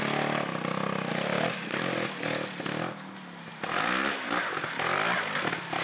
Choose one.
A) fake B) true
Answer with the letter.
B